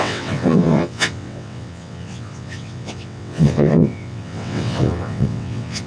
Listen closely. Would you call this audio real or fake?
fake